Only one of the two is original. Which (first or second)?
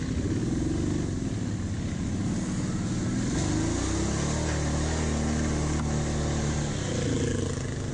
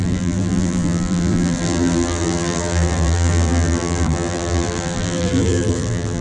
first